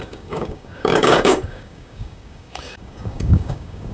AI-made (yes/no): yes